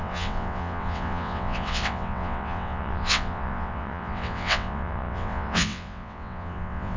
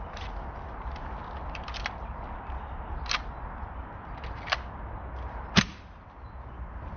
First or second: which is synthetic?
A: first